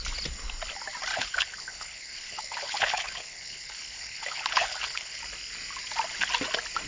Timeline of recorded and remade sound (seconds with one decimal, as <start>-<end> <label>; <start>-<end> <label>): 0.0-1.1 recorded; 1.1-5.2 remade; 5.2-6.9 recorded